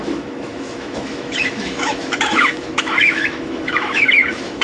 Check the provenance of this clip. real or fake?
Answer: fake